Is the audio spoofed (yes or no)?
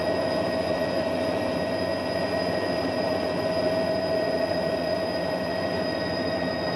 yes